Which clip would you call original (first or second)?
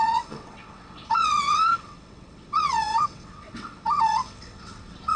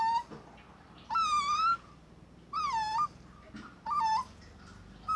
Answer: second